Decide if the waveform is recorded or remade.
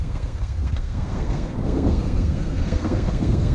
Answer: remade